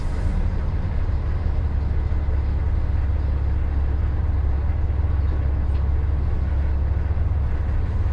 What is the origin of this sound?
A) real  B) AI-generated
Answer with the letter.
A